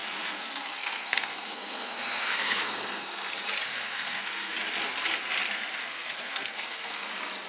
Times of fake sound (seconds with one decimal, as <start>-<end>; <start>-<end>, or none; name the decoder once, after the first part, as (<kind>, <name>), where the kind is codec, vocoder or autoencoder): 0.0-3.3 (codec, SNAC); 3.7-4.5; 5.8-7.1

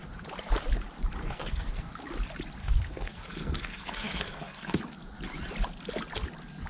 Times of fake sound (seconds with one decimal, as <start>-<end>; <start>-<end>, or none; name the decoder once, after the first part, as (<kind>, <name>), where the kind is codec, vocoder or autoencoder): 1.2-1.9 (codec, SNAC); 2.6-4.8

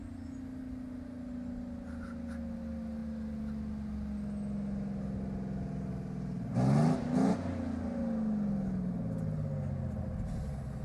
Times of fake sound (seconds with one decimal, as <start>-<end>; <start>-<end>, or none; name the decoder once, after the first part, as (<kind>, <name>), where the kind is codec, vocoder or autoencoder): none

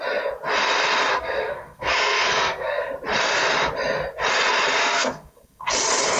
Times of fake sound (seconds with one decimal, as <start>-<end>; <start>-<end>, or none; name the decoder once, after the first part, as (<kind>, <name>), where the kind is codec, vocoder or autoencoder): 1.1-2.9 (codec, SNAC); 4.8-5.7

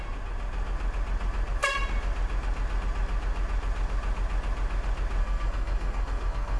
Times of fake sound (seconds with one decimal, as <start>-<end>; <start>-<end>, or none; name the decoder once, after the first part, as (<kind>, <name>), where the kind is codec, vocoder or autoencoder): 5.2-6.6 (codec, SNAC)

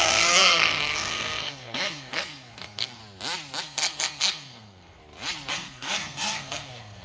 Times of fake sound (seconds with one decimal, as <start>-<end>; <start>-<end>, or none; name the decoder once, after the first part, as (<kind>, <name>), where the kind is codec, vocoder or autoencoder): 0.0-3.0 (codec, SNAC); 3.6-5.0; 5.5-7.0

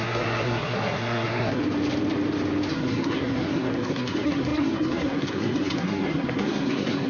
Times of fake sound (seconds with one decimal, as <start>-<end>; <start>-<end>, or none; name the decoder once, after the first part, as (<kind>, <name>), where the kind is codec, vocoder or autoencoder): 0.0-1.6 (codec, SNAC); 2.7-7.1